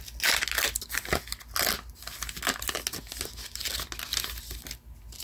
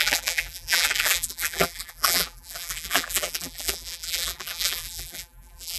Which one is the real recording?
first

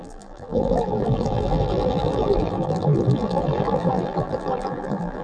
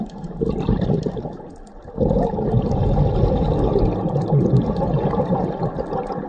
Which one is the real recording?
second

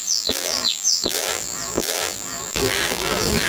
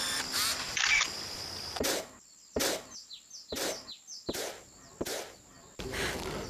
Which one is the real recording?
second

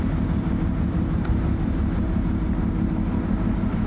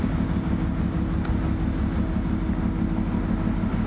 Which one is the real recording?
second